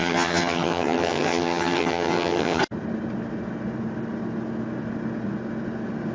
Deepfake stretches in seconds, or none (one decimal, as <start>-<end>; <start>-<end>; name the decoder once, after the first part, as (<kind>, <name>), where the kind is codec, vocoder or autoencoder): 0.0-2.6 (vocoder, HiFi-GAN)

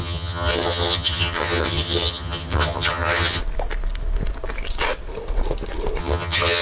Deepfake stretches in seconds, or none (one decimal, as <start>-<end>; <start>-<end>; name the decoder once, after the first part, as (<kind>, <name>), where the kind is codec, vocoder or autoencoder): 0.0-3.4 (vocoder, HiFi-GAN); 6.0-6.6

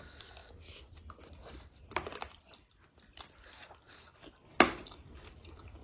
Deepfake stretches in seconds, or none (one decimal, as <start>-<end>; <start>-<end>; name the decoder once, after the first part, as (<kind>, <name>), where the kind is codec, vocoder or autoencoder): none